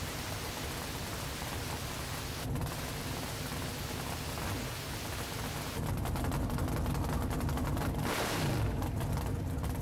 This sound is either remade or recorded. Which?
recorded